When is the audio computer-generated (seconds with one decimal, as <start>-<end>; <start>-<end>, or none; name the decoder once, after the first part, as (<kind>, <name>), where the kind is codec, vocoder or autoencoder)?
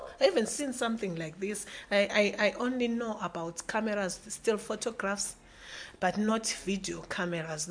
0.0-0.6 (vocoder, Vocos); 5.7-6.3